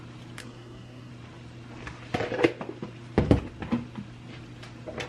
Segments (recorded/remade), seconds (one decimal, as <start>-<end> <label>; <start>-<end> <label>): 0.0-0.4 recorded; 0.4-1.1 remade; 1.1-5.1 recorded